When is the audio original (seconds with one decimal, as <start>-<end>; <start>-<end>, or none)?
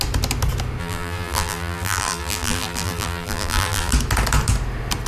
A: 0.0-0.8; 3.9-5.1